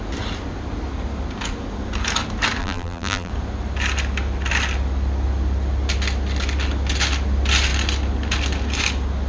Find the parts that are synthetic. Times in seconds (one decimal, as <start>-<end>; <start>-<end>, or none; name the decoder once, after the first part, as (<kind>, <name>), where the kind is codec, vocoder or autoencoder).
2.6-3.3 (vocoder, BigVGAN v2)